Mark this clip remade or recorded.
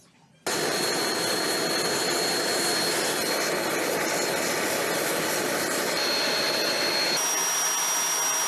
recorded